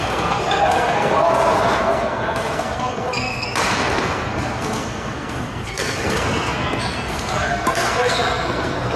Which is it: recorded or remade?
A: remade